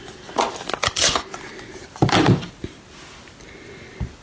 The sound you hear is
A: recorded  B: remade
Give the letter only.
A